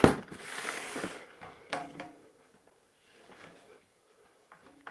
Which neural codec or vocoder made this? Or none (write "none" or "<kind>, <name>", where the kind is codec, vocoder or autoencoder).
codec, DAC